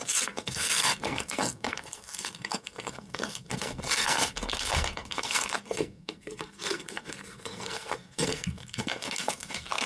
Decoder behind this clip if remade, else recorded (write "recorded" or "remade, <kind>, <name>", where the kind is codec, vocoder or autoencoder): remade, codec, SNAC